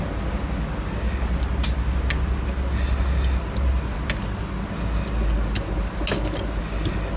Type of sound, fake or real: real